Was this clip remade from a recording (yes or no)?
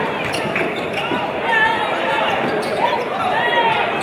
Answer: no